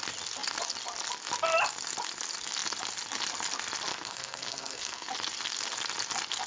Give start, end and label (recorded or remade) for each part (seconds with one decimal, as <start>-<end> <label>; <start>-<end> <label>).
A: 0.0-3.9 recorded; 3.9-5.1 remade; 5.1-6.5 recorded